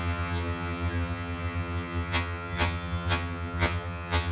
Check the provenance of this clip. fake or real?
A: fake